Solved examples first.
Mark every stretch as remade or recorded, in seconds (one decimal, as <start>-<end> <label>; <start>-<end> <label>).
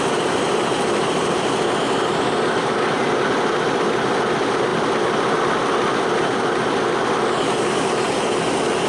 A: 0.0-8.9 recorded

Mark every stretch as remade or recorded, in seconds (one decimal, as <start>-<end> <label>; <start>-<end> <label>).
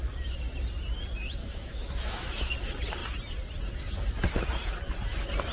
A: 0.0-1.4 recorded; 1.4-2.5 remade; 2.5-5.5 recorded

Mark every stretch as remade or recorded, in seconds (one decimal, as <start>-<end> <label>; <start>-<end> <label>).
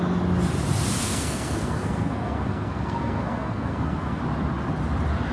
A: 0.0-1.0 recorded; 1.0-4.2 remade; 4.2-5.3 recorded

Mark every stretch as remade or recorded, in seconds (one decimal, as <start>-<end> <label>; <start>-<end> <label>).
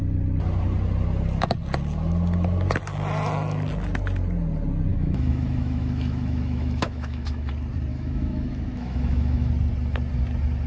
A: 0.0-4.9 recorded; 4.9-7.5 remade; 7.5-7.9 recorded; 7.9-9.5 remade; 9.5-10.7 recorded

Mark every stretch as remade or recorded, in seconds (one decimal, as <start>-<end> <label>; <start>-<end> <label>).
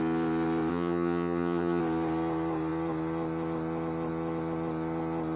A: 0.0-0.7 recorded; 0.7-1.8 remade; 1.8-5.4 recorded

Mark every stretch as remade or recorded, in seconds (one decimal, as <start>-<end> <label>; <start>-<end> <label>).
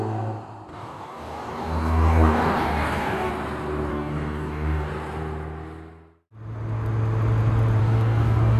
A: 0.0-0.7 recorded; 0.7-3.3 remade; 3.3-3.9 recorded; 3.9-4.9 remade; 4.9-7.8 recorded; 7.8-8.6 remade